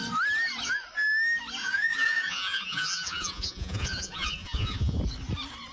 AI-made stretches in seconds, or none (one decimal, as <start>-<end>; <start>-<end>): 1.6-5.0